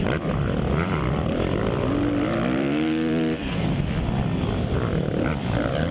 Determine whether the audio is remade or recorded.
remade